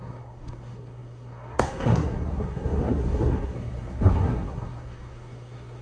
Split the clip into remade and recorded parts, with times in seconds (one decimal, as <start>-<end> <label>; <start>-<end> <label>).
0.0-5.8 remade